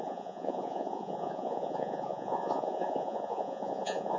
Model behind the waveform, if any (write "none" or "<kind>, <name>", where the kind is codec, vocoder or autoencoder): vocoder, Vocos